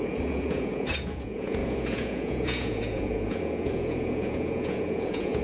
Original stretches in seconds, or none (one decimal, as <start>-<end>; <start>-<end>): none